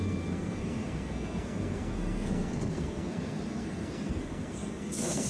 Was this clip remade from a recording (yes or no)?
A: yes